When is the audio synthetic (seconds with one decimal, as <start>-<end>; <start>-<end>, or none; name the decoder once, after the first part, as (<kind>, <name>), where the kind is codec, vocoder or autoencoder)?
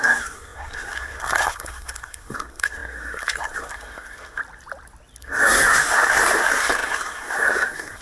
0.0-4.4 (codec, SNAC); 5.2-8.0